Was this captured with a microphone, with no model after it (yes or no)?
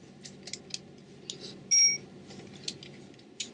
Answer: yes